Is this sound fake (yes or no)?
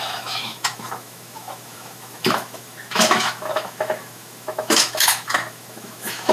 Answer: yes